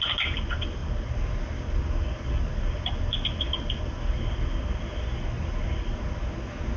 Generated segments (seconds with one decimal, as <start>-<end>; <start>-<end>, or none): none